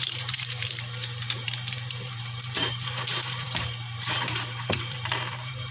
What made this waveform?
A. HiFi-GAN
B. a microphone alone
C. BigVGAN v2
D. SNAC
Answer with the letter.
C